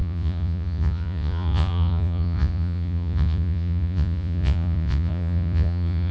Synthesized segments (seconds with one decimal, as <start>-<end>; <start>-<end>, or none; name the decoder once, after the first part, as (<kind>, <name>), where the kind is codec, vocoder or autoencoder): 0.0-6.1 (vocoder, Vocos)